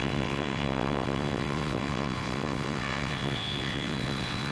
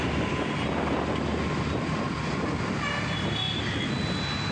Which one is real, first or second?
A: second